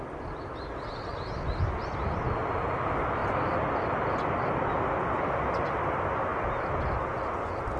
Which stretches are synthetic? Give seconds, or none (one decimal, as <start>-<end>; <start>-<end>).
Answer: none